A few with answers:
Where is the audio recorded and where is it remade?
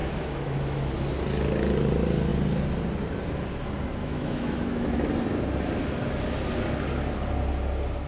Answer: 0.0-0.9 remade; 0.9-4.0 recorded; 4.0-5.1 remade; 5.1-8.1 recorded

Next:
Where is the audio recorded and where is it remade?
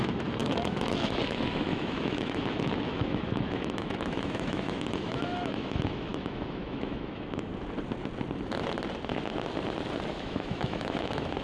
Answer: 0.0-7.5 remade; 7.5-10.1 recorded; 10.1-11.4 remade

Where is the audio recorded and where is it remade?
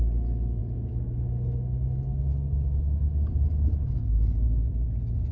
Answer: 0.0-0.6 recorded; 0.6-3.3 remade; 3.3-5.3 recorded